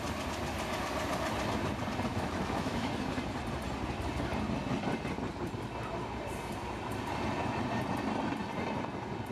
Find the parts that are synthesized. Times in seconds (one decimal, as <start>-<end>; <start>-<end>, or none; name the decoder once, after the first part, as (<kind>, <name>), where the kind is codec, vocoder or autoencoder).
2.1-2.9 (autoencoder, DAC-VAE)